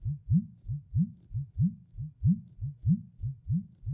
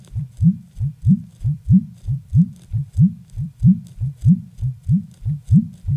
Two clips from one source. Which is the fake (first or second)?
second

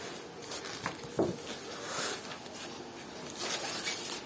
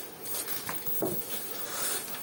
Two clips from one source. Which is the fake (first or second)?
second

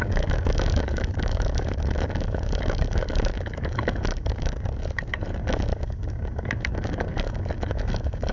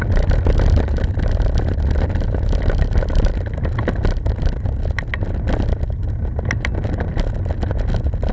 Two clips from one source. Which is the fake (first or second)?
first